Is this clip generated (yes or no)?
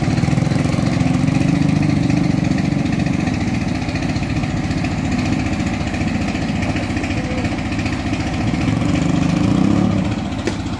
no